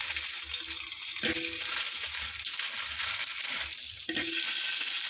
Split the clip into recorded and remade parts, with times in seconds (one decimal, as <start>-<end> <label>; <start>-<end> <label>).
0.0-5.1 recorded